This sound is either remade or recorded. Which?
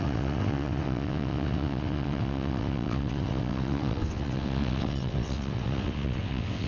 remade